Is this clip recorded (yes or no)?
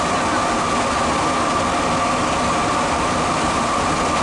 yes